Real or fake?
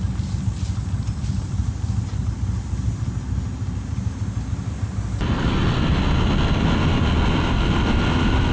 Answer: real